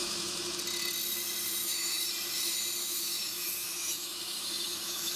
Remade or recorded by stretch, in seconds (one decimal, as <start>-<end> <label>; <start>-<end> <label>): 0.0-0.6 remade; 0.6-1.6 recorded; 1.6-2.1 remade; 2.1-2.8 recorded; 2.8-5.2 remade

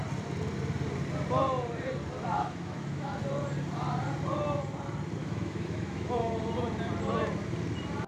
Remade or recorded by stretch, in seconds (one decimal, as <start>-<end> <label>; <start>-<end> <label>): 0.0-2.3 recorded; 2.3-3.2 remade; 3.2-5.2 recorded; 5.2-6.4 remade; 6.4-8.1 recorded

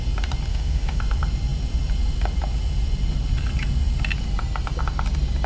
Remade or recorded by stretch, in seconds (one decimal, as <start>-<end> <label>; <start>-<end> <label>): 0.0-0.5 recorded; 0.5-1.0 remade; 1.0-5.5 recorded

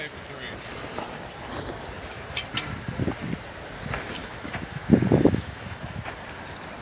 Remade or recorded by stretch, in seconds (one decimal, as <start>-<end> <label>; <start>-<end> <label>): 0.0-4.2 recorded; 4.2-6.0 remade; 6.0-6.8 recorded